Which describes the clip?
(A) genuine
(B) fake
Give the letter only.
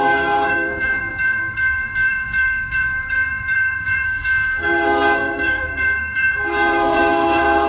B